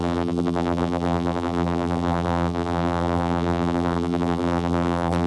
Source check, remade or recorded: remade